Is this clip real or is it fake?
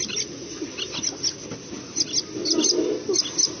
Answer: real